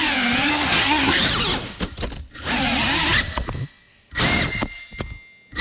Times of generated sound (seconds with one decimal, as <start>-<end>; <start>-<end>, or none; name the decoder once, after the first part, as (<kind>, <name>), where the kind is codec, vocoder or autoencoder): 0.5-1.2 (codec, SNAC)